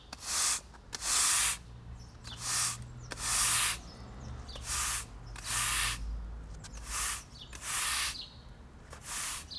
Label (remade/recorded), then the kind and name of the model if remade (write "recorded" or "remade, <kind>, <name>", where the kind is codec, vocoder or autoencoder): recorded